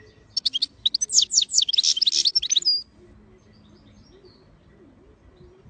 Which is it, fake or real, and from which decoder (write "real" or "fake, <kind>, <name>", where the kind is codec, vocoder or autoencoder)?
real